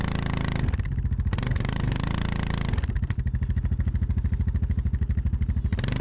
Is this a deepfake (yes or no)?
no